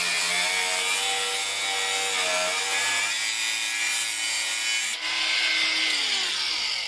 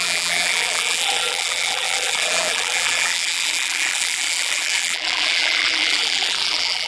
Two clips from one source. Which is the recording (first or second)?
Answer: first